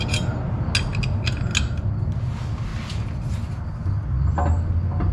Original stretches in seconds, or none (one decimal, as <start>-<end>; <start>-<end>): 0.0-5.1